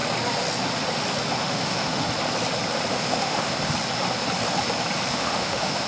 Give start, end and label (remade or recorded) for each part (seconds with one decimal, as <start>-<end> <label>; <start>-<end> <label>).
0.0-1.4 recorded; 1.4-2.0 remade; 2.0-2.9 recorded; 2.9-3.6 remade; 3.6-5.1 recorded; 5.1-5.9 remade